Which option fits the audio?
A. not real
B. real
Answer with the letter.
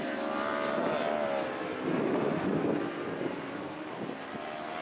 B